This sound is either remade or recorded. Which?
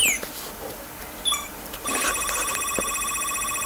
recorded